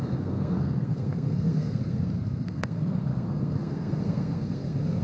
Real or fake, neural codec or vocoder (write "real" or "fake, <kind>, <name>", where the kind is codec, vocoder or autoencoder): fake, codec, SNAC